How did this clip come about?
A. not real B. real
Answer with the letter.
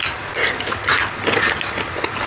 B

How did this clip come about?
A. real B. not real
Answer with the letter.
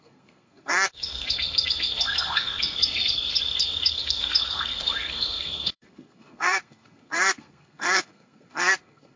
B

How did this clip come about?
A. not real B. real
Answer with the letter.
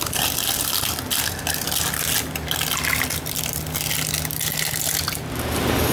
B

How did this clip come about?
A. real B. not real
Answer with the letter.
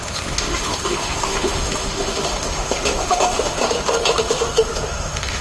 B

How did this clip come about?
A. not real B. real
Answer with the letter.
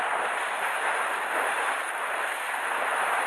B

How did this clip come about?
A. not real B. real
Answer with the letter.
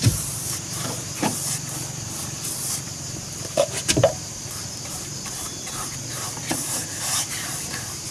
A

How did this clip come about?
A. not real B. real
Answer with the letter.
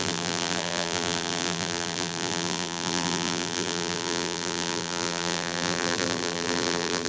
A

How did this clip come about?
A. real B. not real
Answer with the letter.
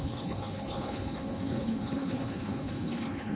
B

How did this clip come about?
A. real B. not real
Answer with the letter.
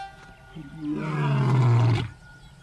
A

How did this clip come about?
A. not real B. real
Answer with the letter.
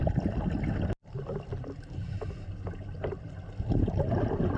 B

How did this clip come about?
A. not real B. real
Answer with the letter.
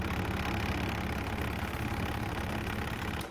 B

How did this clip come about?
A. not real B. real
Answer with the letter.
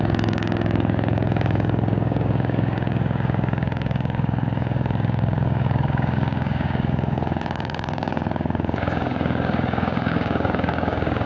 A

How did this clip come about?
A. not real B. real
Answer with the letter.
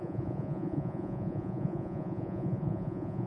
A